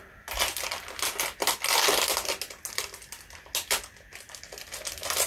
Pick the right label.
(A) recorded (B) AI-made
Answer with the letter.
A